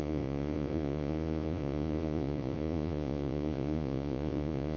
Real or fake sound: fake